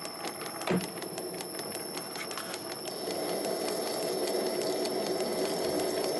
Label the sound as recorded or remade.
recorded